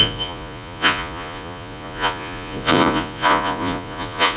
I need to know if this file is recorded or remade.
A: remade